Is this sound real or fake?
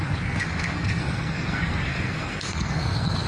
fake